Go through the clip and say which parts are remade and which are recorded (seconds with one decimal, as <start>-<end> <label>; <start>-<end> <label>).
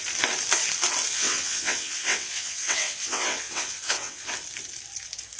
0.0-1.1 recorded; 1.1-4.3 remade; 4.3-5.4 recorded